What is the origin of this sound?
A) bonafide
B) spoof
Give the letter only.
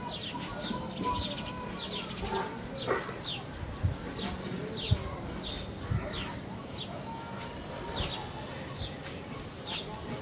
A